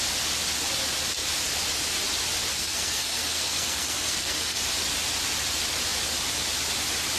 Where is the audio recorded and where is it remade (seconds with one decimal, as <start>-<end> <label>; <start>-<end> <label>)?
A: 0.0-2.5 recorded; 2.5-4.6 remade; 4.6-7.2 recorded